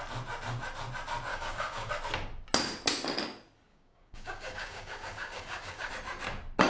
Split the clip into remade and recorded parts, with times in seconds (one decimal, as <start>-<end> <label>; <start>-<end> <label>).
0.0-1.3 recorded; 1.3-1.9 remade; 1.9-3.7 recorded; 3.7-5.9 remade; 5.9-6.7 recorded